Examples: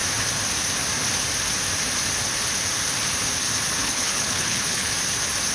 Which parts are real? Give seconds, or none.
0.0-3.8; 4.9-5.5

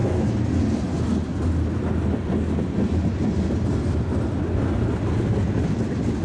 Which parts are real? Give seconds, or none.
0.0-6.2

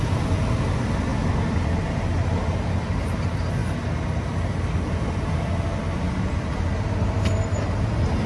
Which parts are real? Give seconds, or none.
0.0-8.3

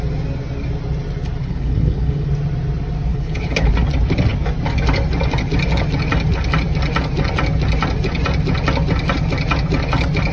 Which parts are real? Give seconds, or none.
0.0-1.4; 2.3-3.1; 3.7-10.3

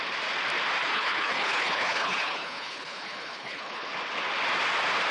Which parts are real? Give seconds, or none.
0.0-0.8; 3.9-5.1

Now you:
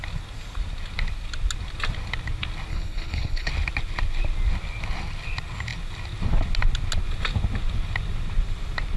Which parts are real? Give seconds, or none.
0.0-2.7; 3.5-9.0

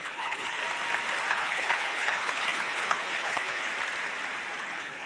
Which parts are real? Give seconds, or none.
0.6-1.3; 3.7-4.6

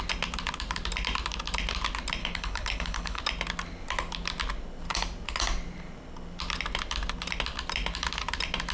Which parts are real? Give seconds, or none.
0.0-2.2; 3.2-8.7